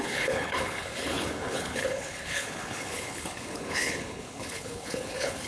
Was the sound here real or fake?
fake